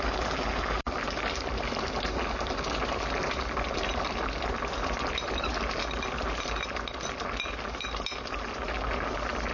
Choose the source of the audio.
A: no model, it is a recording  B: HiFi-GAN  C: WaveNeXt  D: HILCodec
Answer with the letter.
A